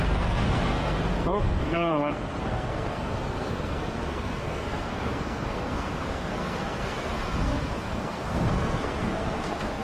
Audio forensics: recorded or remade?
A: remade